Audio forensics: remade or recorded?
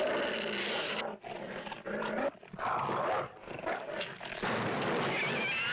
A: recorded